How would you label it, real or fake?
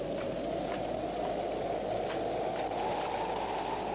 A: real